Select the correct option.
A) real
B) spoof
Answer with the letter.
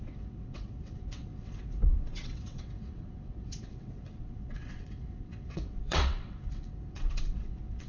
B